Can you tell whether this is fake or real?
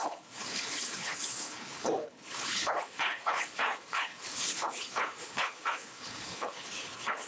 fake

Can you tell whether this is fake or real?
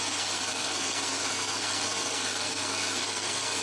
fake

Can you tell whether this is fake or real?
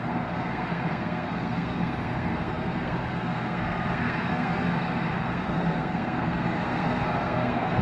fake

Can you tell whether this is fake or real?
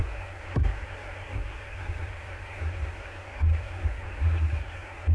fake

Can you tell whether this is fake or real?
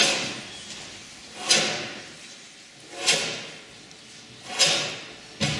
real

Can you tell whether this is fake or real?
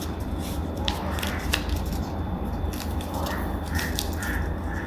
fake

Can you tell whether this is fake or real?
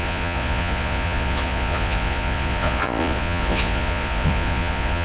fake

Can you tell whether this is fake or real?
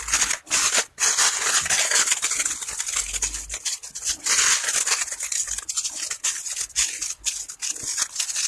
real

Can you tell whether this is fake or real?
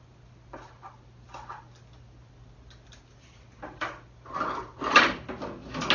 real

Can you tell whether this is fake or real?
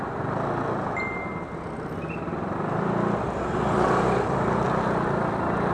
real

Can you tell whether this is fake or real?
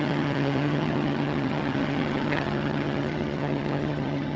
fake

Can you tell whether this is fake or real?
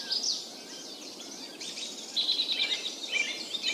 real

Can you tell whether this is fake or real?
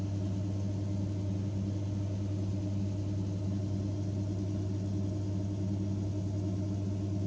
real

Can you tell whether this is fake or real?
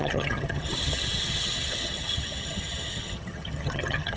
fake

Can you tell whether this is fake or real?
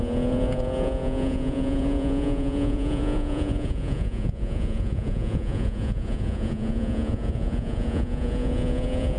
fake